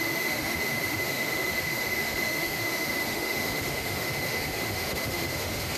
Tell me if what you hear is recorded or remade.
remade